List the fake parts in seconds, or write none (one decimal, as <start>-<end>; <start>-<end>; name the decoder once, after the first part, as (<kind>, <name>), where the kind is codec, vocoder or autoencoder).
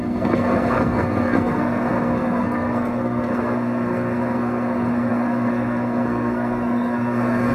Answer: 0.0-7.5 (codec, SNAC)